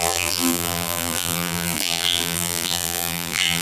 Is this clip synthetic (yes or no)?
yes